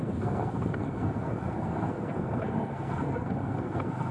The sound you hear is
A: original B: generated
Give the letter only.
B